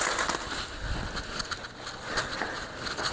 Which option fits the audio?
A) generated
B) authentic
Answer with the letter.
B